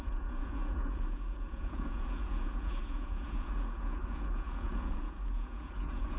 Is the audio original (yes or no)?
no